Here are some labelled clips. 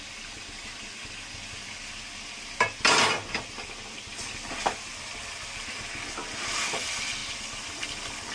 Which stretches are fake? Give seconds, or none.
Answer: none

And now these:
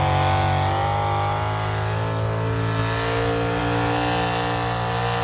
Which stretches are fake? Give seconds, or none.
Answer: none